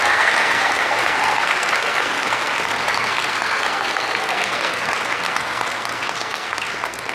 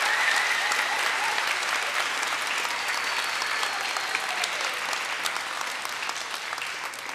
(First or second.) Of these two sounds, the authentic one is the second